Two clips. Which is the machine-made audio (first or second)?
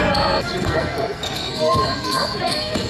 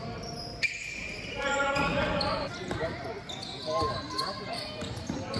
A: first